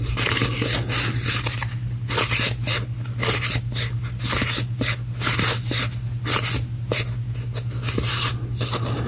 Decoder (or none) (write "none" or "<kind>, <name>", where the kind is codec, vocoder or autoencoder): none